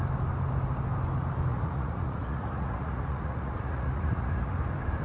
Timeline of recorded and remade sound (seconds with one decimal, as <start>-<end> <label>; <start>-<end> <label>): 0.0-1.5 recorded; 1.5-4.5 remade; 4.5-5.0 recorded